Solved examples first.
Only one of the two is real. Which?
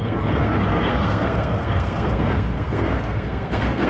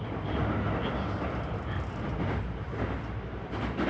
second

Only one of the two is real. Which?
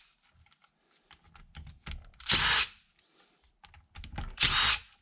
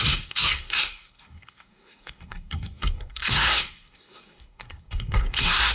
first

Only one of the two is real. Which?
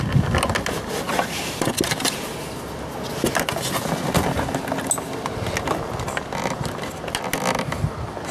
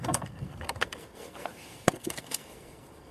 first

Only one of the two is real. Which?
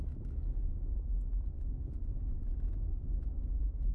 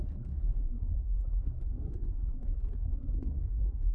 first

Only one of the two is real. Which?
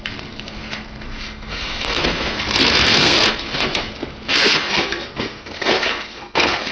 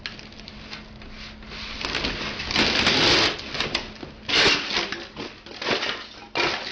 second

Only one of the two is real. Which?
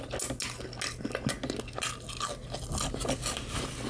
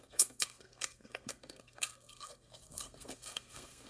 first